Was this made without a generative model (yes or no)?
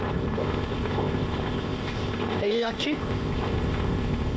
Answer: no